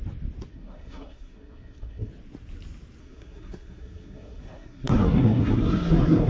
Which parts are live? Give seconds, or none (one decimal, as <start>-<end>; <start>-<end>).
0.0-0.5; 2.1-3.0